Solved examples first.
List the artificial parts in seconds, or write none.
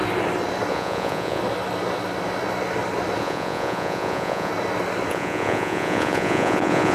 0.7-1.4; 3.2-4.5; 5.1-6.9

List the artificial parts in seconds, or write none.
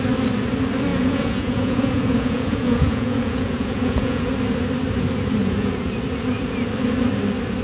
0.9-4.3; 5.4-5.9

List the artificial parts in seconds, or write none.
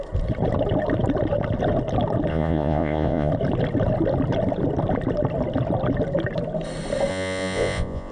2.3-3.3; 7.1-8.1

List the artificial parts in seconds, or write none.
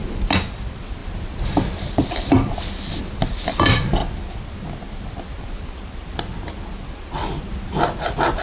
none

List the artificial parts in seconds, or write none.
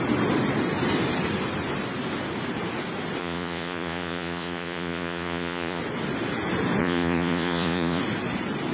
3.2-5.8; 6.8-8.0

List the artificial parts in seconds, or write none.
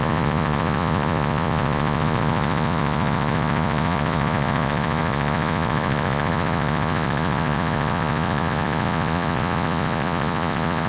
0.0-10.9